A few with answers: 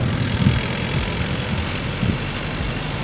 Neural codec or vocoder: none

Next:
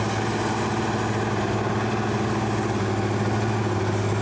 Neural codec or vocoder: none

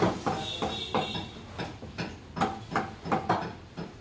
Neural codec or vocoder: none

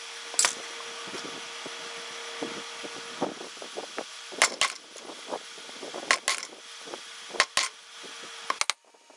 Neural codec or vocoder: none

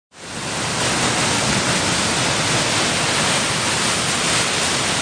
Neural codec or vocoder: none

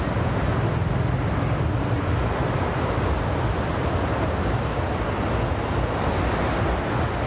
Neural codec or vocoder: none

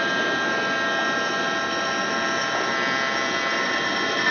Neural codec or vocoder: none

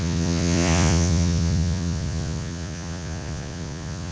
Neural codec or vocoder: vocoder, Vocos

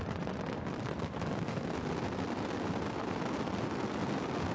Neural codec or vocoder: none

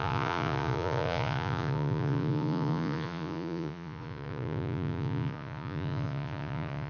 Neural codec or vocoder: vocoder, Vocos